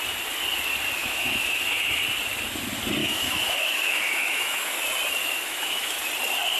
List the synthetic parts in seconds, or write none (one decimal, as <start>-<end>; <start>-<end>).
1.0-2.0; 3.0-4.8; 5.2-6.1